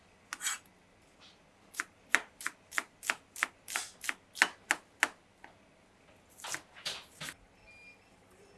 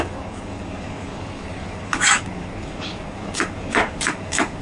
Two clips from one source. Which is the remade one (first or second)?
second